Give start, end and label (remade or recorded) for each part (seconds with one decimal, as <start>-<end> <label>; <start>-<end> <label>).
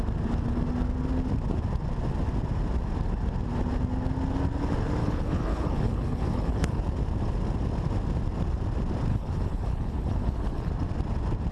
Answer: 0.0-5.0 recorded; 5.0-6.8 remade; 6.8-9.1 recorded; 9.1-10.7 remade; 10.7-11.5 recorded